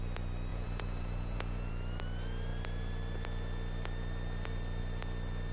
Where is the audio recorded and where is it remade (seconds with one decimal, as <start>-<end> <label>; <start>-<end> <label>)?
0.0-0.5 recorded; 0.5-1.7 remade; 1.7-5.5 recorded